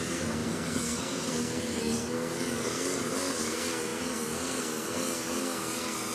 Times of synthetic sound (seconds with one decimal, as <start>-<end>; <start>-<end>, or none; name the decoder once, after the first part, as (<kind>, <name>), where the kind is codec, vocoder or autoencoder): 0.0-6.1 (codec, SNAC)